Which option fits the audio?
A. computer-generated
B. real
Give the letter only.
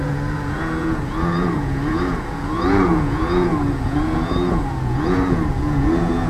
A